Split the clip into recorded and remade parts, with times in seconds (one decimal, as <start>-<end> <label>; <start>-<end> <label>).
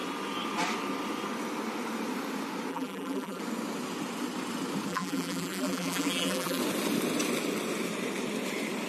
0.0-2.7 recorded; 2.7-3.4 remade; 3.4-4.9 recorded; 4.9-6.6 remade; 6.6-8.9 recorded